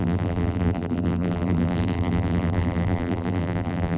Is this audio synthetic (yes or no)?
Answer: yes